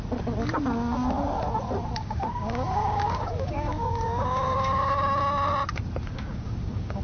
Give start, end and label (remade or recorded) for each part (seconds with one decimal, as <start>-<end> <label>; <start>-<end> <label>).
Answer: 0.0-2.0 recorded; 2.0-5.2 remade; 5.2-6.0 recorded; 6.0-7.0 remade